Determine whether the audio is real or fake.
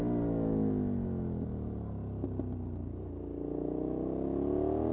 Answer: real